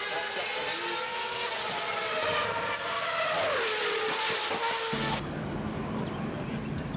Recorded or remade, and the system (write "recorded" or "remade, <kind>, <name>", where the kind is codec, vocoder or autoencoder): recorded